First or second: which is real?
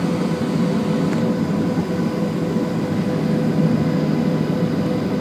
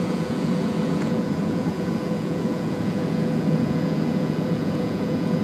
first